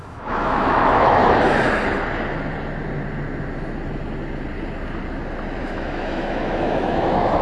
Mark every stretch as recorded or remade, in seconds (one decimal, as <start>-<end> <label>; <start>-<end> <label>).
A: 0.0-1.2 remade; 1.2-5.6 recorded; 5.6-7.4 remade